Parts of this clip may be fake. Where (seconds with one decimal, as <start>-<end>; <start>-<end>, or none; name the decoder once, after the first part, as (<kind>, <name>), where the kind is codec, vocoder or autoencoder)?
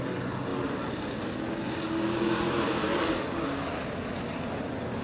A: none